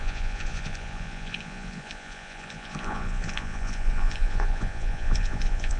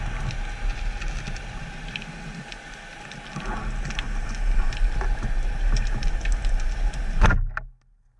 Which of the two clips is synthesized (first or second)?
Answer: first